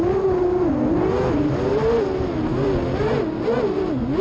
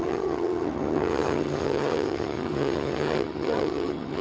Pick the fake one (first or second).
second